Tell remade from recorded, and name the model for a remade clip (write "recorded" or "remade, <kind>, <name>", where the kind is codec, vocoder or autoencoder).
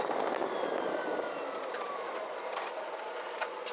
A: recorded